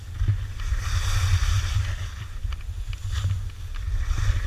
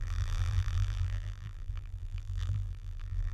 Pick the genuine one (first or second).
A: first